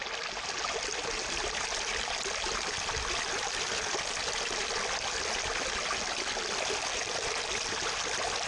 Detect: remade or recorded recorded